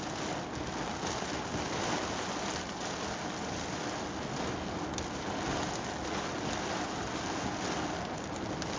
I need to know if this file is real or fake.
real